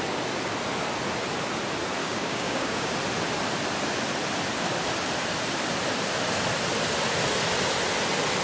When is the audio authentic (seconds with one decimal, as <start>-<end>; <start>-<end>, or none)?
0.0-2.0; 2.9-8.4